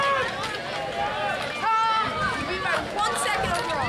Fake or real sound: real